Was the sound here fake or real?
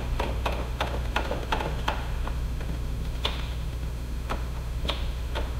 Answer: fake